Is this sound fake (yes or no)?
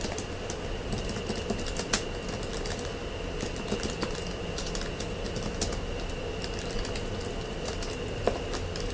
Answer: no